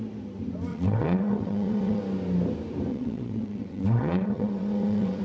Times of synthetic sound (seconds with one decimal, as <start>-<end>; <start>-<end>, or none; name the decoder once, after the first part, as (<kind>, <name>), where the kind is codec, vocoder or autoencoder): 0.7-2.0 (vocoder, WaveNeXt); 2.9-5.2